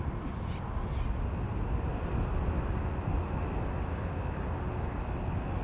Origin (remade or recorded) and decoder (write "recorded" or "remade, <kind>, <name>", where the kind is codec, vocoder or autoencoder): recorded